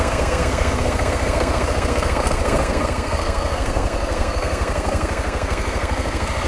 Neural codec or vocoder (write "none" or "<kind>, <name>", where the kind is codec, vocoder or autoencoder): codec, SNAC